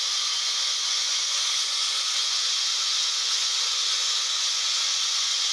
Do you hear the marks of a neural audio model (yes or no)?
yes